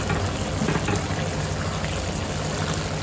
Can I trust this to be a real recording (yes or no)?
yes